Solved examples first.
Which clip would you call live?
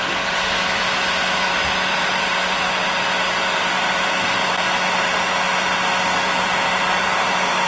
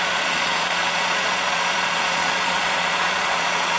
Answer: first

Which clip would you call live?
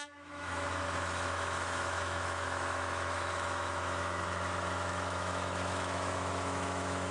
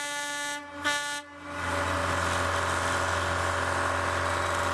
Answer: second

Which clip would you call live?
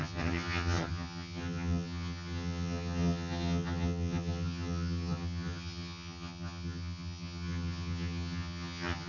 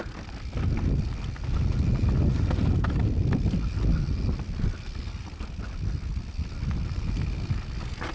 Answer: second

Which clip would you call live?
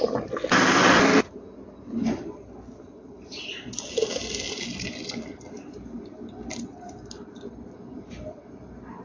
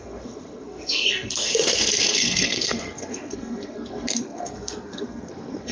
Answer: first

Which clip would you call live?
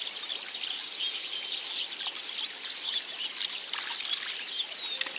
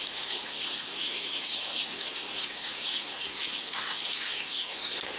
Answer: first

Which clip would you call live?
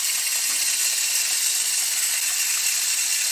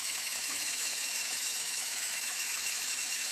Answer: first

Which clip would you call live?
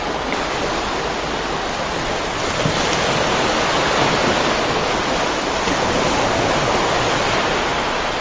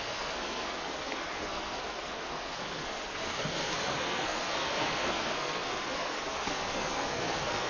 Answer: first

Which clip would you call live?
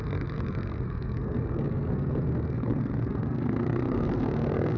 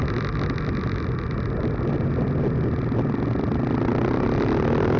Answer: second